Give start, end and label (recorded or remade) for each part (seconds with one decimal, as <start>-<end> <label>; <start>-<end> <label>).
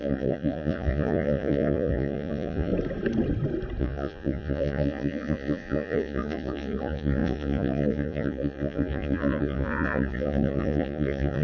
0.0-2.7 remade; 2.7-3.8 recorded; 3.8-11.4 remade